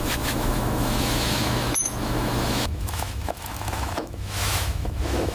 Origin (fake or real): fake